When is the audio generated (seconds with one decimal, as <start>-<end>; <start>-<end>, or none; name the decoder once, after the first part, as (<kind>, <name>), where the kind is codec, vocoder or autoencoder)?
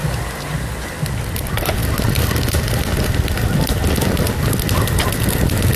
0.0-1.0 (vocoder, BigVGAN v2)